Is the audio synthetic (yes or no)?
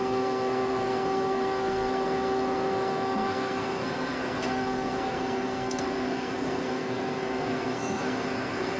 yes